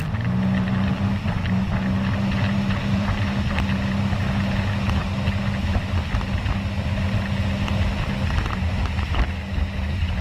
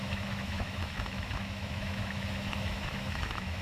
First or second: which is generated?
second